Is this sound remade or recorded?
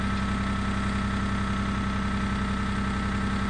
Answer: recorded